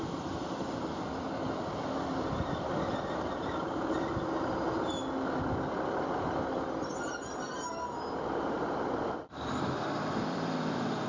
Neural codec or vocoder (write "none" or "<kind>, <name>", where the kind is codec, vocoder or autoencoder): vocoder, BigVGAN v2